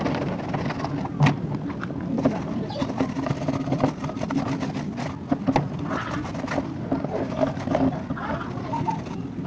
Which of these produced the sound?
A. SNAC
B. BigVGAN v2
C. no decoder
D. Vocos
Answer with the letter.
C